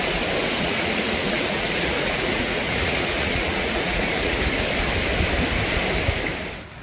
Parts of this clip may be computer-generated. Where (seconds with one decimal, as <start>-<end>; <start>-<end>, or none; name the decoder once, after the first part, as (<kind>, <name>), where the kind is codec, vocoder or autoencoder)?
0.4-4.4 (vocoder, Vocos)